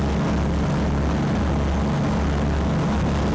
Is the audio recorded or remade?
recorded